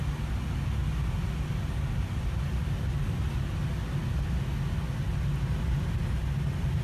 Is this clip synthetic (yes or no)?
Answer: no